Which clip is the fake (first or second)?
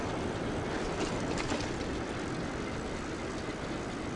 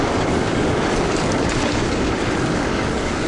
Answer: second